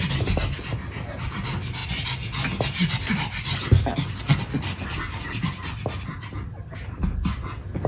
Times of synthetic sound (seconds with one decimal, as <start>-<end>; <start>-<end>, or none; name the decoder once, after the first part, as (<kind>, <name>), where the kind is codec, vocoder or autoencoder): none